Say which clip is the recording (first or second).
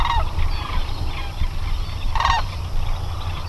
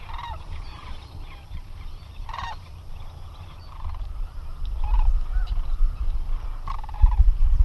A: first